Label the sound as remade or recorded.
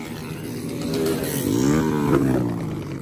recorded